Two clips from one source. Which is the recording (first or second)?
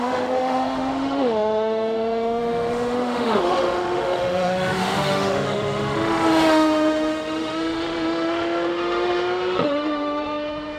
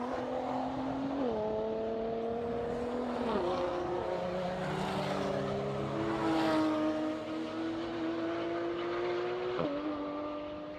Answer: second